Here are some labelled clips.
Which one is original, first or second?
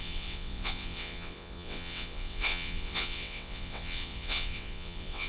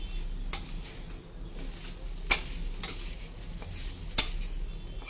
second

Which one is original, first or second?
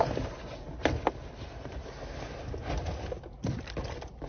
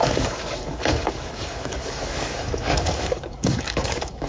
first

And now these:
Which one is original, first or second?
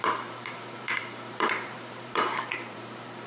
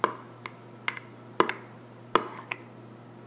second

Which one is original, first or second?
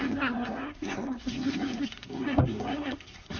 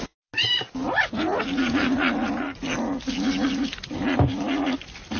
second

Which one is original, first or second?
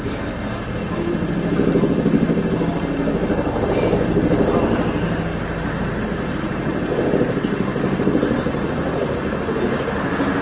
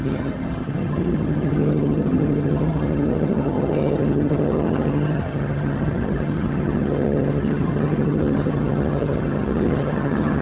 first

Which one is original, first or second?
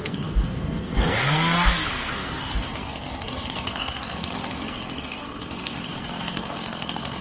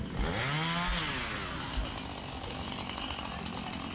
second